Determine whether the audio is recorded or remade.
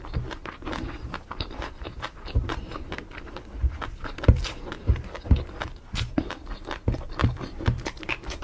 recorded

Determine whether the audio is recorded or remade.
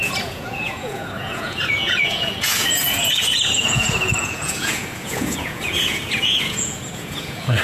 remade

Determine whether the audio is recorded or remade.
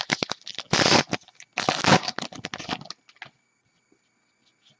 recorded